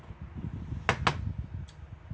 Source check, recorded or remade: recorded